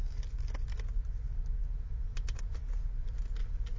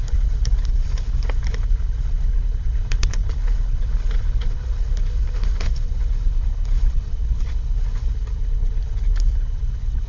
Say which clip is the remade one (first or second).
second